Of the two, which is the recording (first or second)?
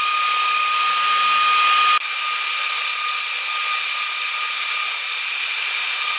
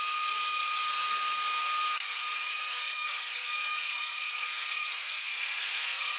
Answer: first